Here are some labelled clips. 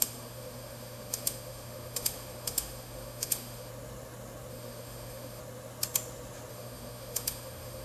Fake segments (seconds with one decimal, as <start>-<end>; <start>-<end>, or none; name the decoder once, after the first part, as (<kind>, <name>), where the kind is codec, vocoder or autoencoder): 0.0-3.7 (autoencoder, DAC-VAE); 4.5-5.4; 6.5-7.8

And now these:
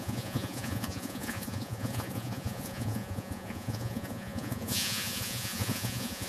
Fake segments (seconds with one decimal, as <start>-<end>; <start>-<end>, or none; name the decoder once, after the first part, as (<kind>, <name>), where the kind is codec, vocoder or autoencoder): 0.0-6.3 (vocoder, Vocos)

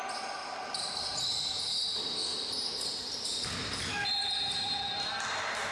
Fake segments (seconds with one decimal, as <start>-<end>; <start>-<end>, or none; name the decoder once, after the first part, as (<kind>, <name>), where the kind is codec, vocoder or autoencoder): 2.3-3.3 (vocoder, BigVGAN v2)

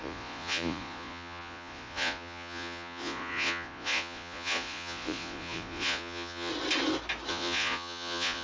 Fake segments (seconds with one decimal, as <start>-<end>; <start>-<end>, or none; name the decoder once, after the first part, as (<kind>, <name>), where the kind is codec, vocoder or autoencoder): 0.0-6.5 (vocoder, Vocos); 7.3-8.4

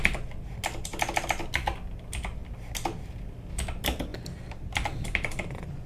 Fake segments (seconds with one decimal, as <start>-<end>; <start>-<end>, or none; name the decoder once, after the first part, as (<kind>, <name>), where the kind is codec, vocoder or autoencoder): none

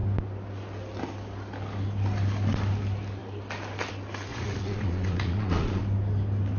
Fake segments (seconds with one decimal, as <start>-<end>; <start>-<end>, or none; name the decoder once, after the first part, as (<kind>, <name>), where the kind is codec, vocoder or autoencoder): 4.3-5.8 (vocoder, Vocos)